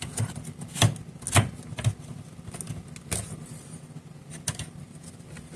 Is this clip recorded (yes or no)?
yes